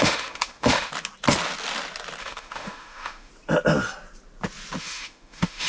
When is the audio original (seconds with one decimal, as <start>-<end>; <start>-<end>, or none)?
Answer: 0.9-2.2; 3.3-4.8